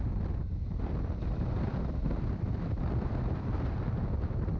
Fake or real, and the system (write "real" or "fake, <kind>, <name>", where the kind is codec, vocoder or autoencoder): real